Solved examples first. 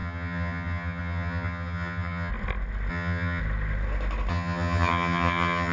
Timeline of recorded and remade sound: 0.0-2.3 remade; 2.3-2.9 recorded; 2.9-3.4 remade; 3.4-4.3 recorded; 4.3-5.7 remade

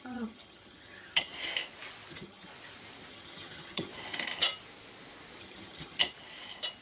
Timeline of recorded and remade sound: 0.0-1.3 remade; 1.3-2.1 recorded; 2.1-2.5 remade; 2.5-3.1 recorded; 3.1-3.9 remade; 3.9-5.4 recorded; 5.4-6.0 remade; 6.0-6.8 recorded

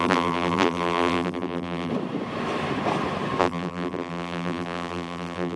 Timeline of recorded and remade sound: 0.0-1.9 remade; 1.9-3.4 recorded; 3.4-5.6 remade

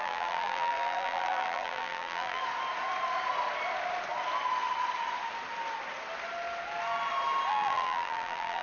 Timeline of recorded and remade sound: 0.0-2.4 remade; 2.4-7.5 recorded; 7.5-8.6 remade

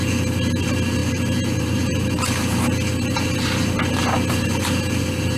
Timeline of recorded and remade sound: 0.0-1.0 recorded; 1.0-1.9 remade; 1.9-5.4 recorded

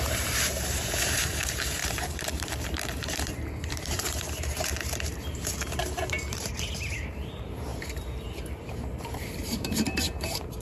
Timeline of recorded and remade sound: 0.0-10.6 remade

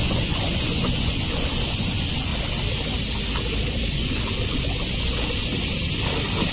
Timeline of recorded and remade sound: 0.0-2.3 remade; 2.3-3.9 recorded; 3.9-5.5 remade; 5.5-6.5 recorded

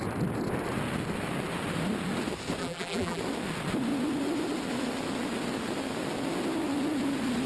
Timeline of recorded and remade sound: 0.0-2.6 recorded; 2.6-3.2 remade; 3.2-7.5 recorded